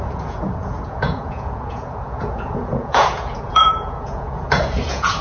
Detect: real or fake fake